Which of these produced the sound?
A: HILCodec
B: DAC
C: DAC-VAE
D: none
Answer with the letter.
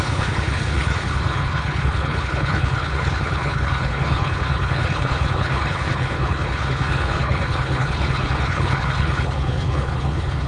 A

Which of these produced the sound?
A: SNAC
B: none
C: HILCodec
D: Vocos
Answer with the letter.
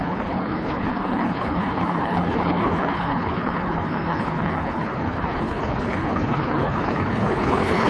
C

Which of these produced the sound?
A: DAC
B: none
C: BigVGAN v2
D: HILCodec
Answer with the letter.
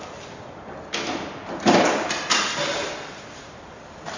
B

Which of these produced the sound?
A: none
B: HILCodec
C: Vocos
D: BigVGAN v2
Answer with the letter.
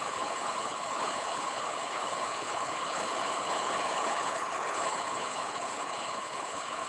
B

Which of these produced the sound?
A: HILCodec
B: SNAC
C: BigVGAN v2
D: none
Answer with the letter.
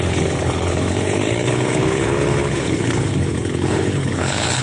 A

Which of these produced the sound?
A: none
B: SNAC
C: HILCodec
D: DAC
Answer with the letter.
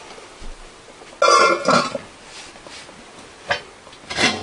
A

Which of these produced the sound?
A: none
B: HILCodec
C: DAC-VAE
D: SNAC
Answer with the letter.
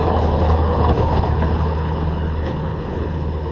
B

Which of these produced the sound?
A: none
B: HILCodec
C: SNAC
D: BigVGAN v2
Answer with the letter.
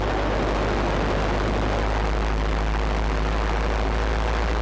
A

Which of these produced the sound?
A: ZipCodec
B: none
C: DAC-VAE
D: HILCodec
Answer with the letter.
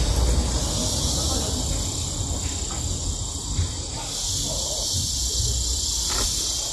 B